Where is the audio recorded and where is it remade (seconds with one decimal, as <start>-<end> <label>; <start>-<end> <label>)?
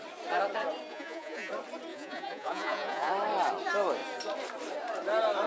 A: 0.0-0.9 recorded; 0.9-1.5 remade; 1.5-1.9 recorded; 1.9-3.1 remade; 3.1-5.5 recorded